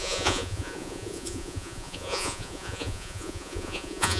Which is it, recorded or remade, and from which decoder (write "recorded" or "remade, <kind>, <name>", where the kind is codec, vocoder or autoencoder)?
remade, vocoder, Vocos